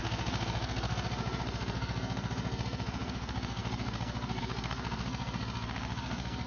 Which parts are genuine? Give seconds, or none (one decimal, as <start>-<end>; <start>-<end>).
none